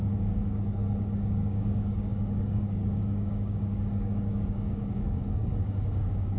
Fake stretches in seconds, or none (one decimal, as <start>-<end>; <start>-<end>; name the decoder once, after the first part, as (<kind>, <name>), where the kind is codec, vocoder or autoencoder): 0.0-6.4 (codec, DAC)